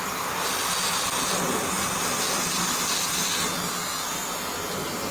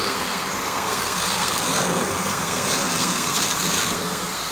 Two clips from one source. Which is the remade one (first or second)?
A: second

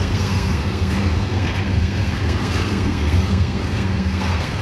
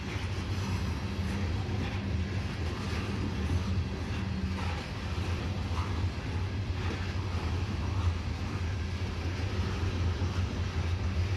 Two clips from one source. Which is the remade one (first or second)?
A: first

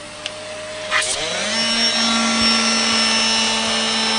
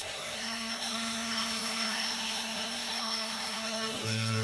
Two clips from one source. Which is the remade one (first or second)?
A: second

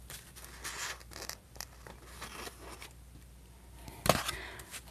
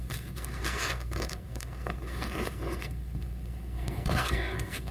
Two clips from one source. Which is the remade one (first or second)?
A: second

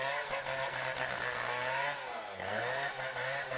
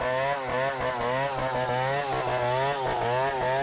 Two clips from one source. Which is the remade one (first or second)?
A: first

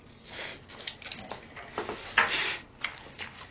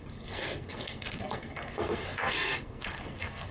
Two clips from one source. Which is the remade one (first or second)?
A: second